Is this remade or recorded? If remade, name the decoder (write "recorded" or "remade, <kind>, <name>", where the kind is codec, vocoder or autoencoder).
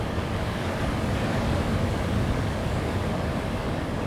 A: remade, codec, DAC